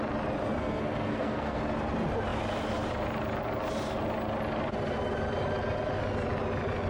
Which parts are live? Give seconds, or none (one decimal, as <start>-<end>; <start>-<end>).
0.0-0.6; 1.6-6.9

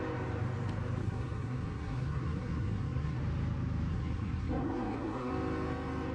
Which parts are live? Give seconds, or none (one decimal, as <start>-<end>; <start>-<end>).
0.0-1.0; 3.2-3.9; 5.3-6.1

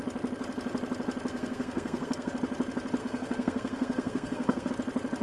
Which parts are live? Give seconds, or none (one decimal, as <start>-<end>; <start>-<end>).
0.0-1.3; 2.3-3.0; 4.7-5.2

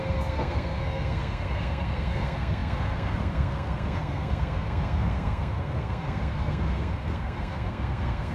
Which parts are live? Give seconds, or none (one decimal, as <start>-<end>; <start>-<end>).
none

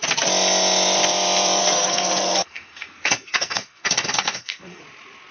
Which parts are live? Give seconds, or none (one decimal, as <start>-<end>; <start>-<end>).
0.0-1.6; 4.8-5.3

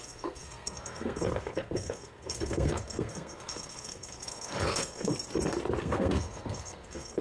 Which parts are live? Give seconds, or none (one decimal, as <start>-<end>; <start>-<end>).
5.1-5.8

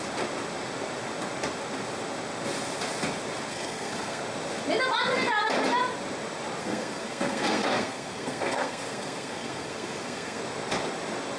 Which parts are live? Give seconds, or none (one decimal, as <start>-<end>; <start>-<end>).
0.0-3.5; 4.2-6.6; 10.4-11.4

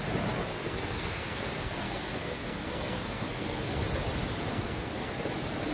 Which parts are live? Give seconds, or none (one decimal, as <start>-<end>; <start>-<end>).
0.0-0.5; 3.9-4.5; 5.1-5.7